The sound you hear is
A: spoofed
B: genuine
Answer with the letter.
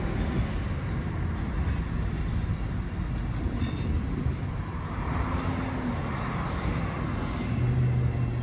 B